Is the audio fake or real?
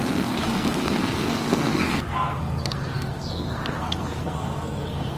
fake